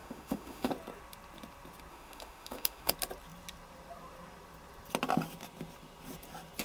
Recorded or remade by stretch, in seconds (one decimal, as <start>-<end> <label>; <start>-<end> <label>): 0.0-0.7 remade; 0.7-1.9 recorded; 1.9-2.9 remade; 2.9-6.6 recorded